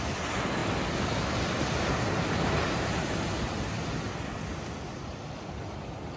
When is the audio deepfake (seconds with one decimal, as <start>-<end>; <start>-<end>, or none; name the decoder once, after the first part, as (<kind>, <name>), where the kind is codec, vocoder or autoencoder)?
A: none